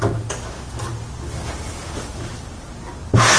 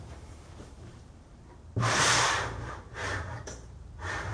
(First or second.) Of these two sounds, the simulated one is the second